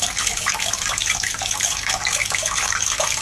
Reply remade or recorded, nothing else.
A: remade